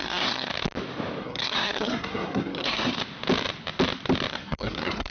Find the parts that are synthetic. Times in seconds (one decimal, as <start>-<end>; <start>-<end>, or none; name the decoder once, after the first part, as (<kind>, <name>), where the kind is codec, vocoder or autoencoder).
0.0-0.5 (codec, SNAC); 1.2-3.0; 4.3-5.1